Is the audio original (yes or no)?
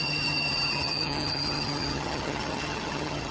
no